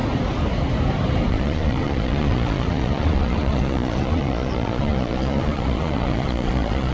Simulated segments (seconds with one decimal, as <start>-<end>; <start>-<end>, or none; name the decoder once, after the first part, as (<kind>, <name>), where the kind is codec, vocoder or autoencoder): 1.3-6.9 (vocoder, Vocos)